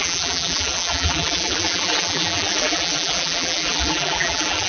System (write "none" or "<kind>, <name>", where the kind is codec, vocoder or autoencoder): vocoder, BigVGAN v2